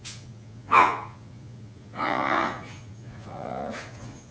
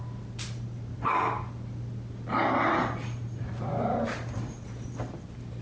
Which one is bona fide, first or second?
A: second